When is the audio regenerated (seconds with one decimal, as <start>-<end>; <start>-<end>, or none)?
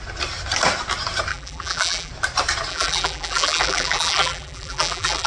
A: 1.3-2.1; 2.7-5.3